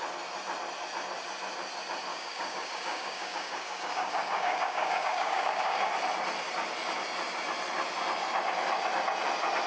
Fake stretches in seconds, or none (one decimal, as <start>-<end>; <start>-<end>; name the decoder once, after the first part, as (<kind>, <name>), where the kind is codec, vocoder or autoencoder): 2.1-5.9 (codec, DAC)